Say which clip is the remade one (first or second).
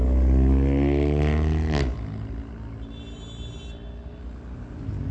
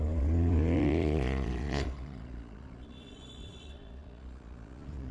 second